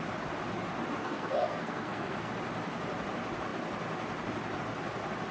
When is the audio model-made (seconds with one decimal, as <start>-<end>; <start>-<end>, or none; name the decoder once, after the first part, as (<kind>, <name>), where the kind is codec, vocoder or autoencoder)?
1.0-2.3 (codec, SNAC)